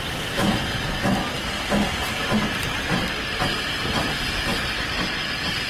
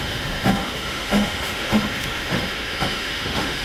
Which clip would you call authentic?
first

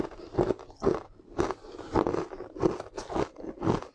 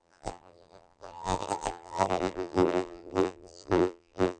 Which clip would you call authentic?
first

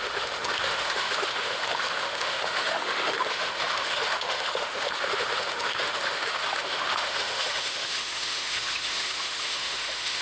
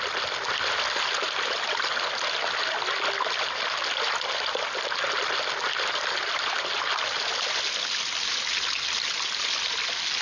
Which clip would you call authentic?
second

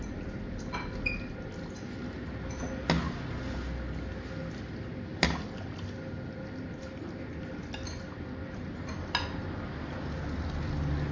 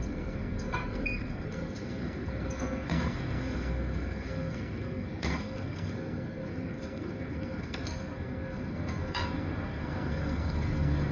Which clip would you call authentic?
first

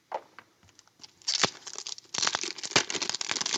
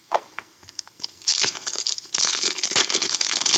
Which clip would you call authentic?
first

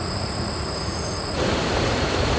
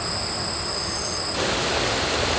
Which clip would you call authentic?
second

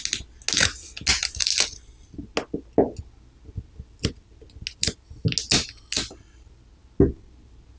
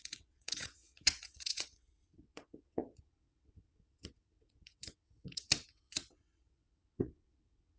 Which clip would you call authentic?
first